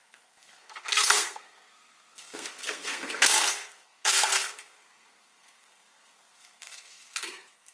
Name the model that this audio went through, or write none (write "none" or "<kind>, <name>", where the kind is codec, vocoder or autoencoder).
codec, SNAC